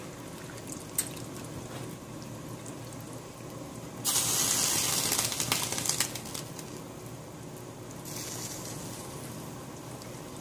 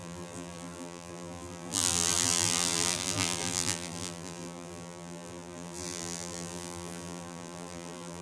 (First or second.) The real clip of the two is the first